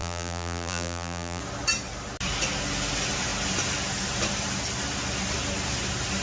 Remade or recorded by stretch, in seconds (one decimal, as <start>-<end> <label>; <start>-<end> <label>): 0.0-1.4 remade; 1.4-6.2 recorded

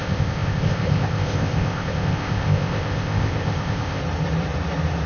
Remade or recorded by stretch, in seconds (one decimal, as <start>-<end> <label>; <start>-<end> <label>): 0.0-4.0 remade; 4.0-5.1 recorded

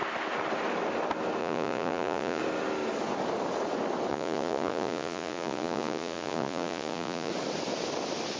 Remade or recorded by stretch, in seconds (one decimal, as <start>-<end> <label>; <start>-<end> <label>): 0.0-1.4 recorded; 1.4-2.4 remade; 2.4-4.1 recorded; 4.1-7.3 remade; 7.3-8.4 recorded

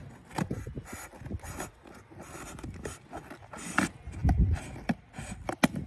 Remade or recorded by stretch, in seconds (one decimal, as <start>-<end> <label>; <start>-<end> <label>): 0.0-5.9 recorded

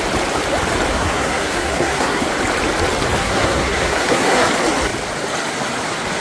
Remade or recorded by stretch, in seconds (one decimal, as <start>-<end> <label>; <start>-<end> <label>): 0.0-0.9 recorded; 0.9-2.2 remade; 2.2-3.2 recorded; 3.2-4.5 remade; 4.5-6.2 recorded

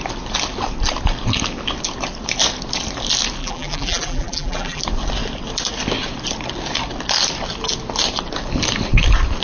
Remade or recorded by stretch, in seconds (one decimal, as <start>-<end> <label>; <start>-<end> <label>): 0.0-3.4 recorded; 3.4-4.8 remade; 4.8-9.4 recorded

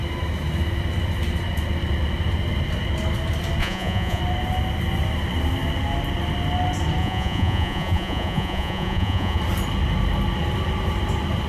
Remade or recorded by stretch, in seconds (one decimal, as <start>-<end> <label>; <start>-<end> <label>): 0.0-3.6 recorded; 3.6-4.2 remade; 4.2-7.0 recorded; 7.0-9.4 remade; 9.4-11.5 recorded

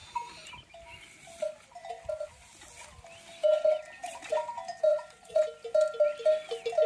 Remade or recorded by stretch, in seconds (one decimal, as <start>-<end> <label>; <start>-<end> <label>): 0.0-4.9 recorded; 4.9-5.4 remade; 5.4-6.9 recorded